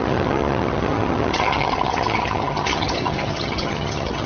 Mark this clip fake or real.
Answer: fake